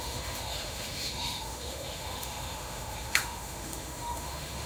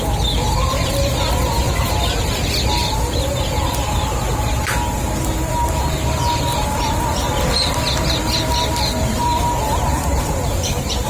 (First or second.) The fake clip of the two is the first